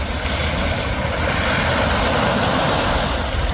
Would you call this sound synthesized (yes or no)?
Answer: no